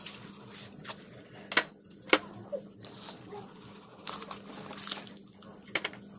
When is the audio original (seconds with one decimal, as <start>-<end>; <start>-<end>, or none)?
0.0-6.2

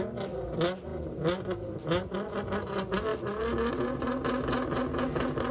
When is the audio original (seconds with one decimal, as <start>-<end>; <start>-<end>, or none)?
0.0-5.5

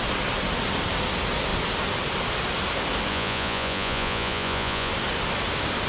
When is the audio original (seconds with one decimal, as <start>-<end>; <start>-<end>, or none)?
0.0-3.1; 4.9-5.9

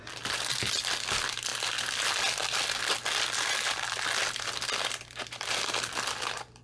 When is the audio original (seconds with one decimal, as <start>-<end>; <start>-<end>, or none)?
0.0-6.6

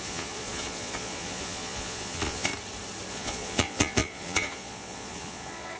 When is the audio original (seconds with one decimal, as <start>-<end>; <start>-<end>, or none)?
2.5-3.1